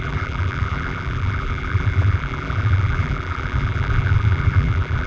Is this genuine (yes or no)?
no